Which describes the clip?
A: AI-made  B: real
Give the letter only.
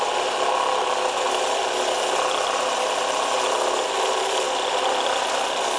B